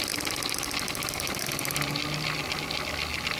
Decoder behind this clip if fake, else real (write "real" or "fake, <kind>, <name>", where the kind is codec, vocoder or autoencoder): real